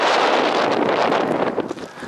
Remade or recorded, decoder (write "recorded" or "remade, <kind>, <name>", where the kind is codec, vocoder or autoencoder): recorded